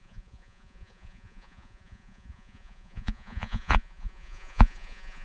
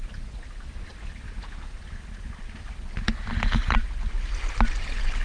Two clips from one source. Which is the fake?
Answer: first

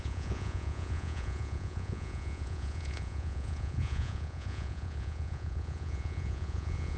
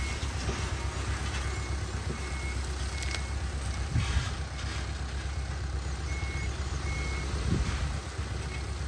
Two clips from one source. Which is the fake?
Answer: first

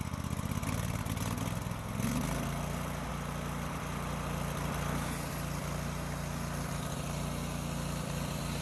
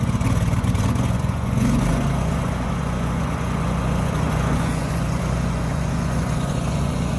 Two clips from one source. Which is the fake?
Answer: second